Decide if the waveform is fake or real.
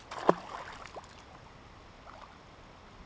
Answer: real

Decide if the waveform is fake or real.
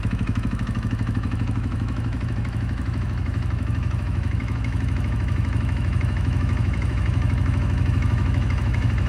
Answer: fake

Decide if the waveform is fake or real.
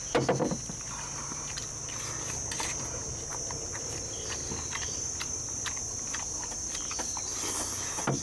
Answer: real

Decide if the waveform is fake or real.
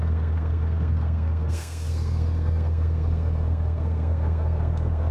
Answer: fake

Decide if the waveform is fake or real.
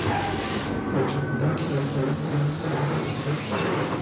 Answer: real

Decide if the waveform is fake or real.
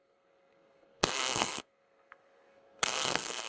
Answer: fake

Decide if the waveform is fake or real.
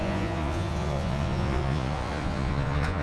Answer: fake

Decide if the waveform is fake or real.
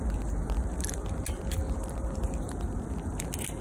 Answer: real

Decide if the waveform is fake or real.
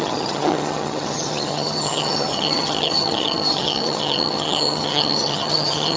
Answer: fake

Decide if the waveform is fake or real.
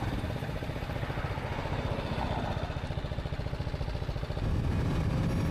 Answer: real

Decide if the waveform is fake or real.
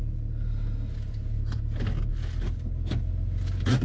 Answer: real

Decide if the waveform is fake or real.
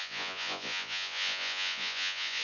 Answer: fake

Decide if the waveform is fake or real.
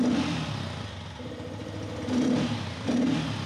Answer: real